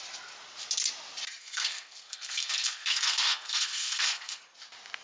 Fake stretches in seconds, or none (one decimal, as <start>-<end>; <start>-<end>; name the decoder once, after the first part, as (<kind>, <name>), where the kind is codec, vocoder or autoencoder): 1.4-4.4 (codec, SNAC)